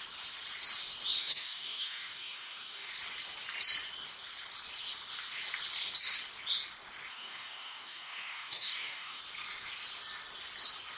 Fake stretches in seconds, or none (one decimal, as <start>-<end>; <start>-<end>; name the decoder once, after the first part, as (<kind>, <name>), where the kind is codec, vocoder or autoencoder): 1.2-2.9 (codec, DAC); 7.1-9.2